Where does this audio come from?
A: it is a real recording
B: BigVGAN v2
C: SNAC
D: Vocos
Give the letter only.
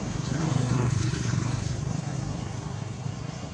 C